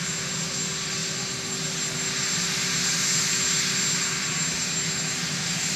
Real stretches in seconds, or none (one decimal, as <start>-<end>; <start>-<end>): 0.0-5.8